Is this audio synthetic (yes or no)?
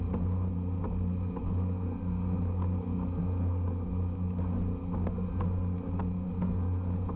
no